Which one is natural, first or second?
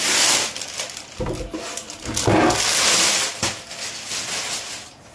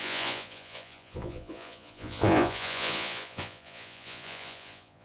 first